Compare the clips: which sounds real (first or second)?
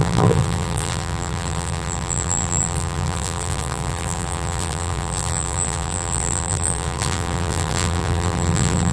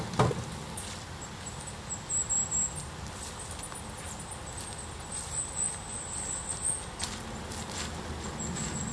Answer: second